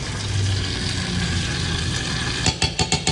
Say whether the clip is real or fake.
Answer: real